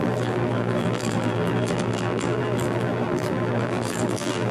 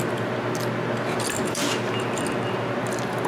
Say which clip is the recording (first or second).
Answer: second